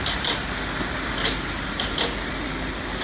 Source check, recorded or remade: recorded